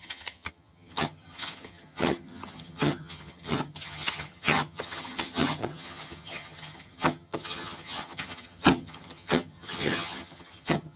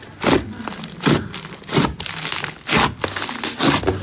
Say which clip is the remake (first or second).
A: first